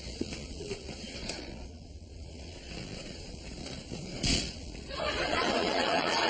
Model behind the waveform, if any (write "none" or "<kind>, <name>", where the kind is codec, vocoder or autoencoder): vocoder, Vocos